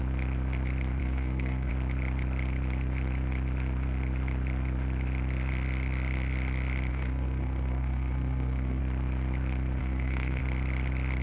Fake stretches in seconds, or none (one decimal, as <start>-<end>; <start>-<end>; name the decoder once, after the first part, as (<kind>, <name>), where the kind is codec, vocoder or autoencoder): 1.0-1.7 (codec, SNAC); 6.9-8.8; 9.8-10.4